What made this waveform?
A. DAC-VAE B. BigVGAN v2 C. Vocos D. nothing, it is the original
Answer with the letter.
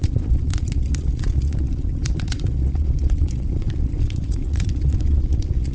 C